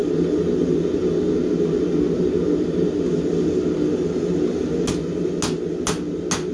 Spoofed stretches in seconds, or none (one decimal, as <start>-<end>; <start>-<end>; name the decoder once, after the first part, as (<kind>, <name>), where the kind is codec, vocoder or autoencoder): none